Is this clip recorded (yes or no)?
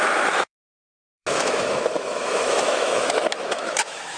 no